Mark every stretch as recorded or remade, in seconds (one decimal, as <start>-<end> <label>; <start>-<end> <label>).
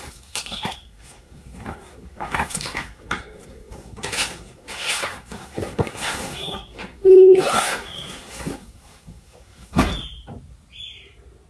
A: 0.0-9.9 remade; 9.9-11.5 recorded